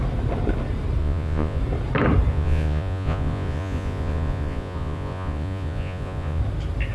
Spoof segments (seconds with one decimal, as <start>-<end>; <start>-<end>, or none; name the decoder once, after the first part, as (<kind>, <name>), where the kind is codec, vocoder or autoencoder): 1.0-1.6 (vocoder, Vocos); 2.3-6.4